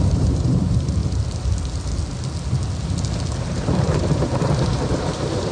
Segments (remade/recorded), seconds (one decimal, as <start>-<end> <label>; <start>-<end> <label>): 0.0-1.0 remade; 1.0-3.4 recorded; 3.4-5.5 remade

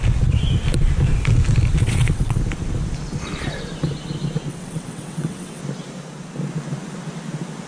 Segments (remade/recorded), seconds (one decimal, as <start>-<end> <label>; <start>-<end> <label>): 0.0-1.8 recorded; 1.8-2.4 remade; 2.4-4.5 recorded; 4.5-5.6 remade; 5.6-7.7 recorded

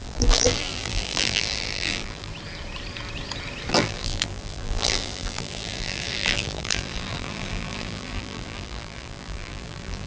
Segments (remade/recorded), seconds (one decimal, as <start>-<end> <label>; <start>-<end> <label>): 0.0-2.3 remade; 2.3-3.7 recorded; 3.7-10.1 remade